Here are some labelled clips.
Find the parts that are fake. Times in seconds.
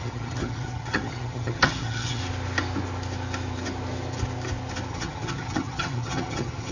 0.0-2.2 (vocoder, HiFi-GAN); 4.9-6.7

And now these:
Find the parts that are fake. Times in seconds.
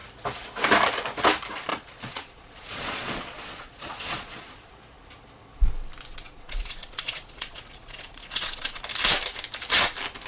1.7-4.7 (vocoder, Vocos); 6.1-8.8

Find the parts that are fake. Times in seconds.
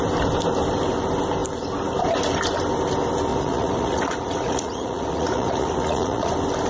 3.3-6.3 (vocoder, Vocos)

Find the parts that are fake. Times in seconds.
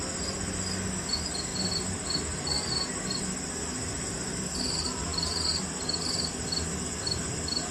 none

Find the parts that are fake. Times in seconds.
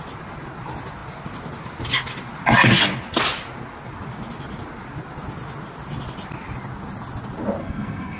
7.6-8.2 (codec, SNAC)